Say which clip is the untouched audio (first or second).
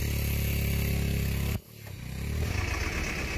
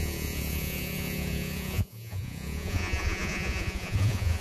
first